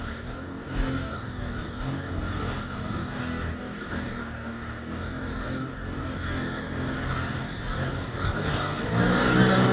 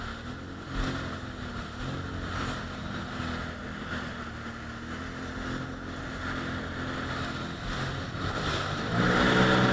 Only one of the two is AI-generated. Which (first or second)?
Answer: first